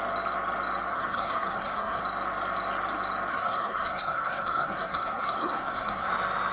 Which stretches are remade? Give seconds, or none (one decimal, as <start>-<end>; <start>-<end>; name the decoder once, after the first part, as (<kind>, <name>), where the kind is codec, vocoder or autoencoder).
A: 0.9-2.0 (codec, SNAC); 3.3-6.1